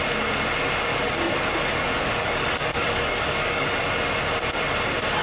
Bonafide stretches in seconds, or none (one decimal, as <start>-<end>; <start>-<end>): 0.0-0.9; 3.7-5.2

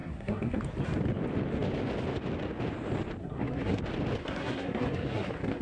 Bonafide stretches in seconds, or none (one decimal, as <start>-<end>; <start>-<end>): 0.6-3.2; 3.8-4.2

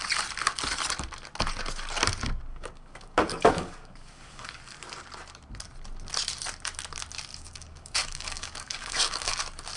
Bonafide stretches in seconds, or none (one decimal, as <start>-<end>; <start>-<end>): 0.0-2.5; 4.6-7.3; 9.3-9.8

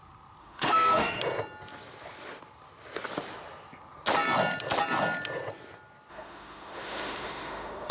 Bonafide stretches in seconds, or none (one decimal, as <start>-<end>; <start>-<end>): 0.0-0.4; 1.2-6.1

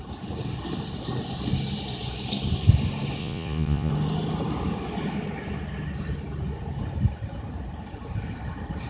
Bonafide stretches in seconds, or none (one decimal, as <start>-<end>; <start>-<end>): 0.0-3.2; 3.9-8.9

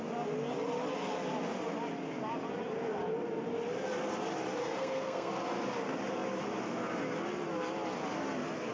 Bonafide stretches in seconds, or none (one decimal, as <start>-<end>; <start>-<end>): 0.0-4.6; 5.3-8.7

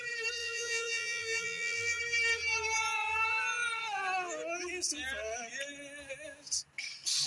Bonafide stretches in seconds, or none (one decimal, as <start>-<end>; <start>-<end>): 0.0-0.4; 2.0-7.3

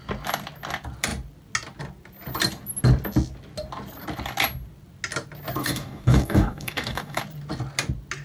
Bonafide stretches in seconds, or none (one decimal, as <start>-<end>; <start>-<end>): 0.0-5.6; 7.2-8.2